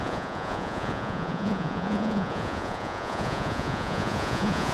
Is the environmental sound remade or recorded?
remade